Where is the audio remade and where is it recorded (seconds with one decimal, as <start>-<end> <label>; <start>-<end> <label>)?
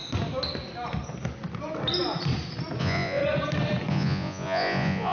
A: 0.0-2.8 recorded; 2.8-3.2 remade; 3.2-3.9 recorded; 3.9-5.1 remade